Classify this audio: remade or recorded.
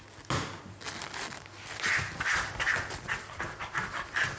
recorded